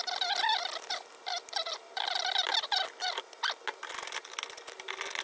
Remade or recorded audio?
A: recorded